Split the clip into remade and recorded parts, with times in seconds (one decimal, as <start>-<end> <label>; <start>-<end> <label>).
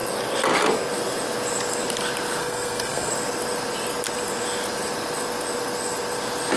0.0-2.4 recorded; 2.4-3.1 remade; 3.1-6.6 recorded